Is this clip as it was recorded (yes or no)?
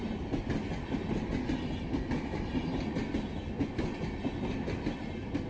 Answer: yes